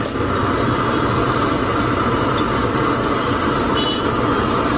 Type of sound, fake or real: real